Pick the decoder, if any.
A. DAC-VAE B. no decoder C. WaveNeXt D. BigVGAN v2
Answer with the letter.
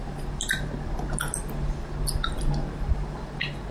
B